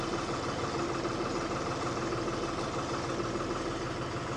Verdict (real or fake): real